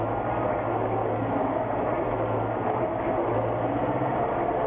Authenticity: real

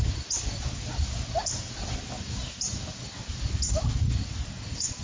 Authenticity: real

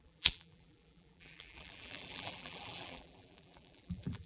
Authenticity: fake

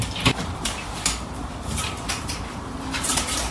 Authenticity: fake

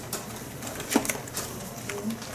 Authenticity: real